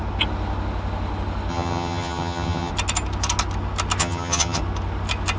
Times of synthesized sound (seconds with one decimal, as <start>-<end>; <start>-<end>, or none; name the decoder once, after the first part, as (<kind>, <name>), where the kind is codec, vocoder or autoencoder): 1.5-2.7 (vocoder, HiFi-GAN); 4.0-4.6